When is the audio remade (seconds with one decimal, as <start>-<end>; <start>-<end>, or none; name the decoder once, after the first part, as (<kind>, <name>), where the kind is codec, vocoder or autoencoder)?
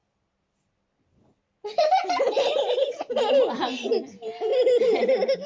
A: none